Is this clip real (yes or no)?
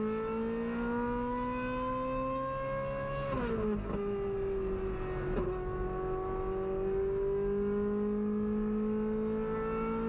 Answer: yes